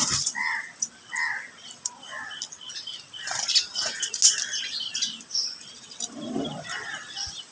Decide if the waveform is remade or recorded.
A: recorded